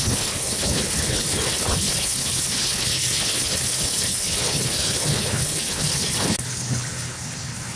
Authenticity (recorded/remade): remade